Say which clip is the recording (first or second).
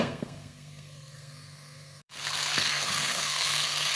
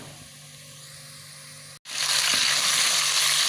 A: second